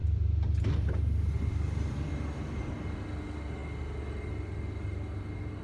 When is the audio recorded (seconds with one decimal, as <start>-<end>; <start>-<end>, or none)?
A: 2.1-5.6